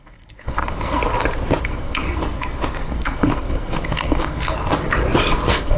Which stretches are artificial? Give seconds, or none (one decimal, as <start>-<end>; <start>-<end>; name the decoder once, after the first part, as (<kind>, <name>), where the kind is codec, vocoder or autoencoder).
0.0-1.0 (codec, SNAC); 1.6-4.7; 5.2-5.8